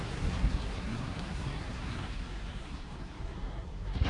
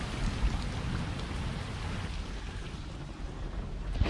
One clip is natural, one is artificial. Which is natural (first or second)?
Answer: second